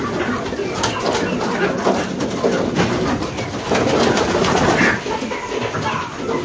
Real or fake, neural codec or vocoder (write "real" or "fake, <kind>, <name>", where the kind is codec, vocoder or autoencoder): real